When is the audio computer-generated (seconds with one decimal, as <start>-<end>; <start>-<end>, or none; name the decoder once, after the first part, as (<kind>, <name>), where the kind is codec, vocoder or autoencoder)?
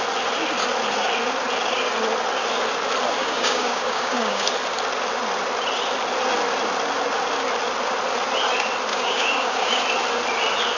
3.2-4.5 (codec, DAC); 8.9-9.8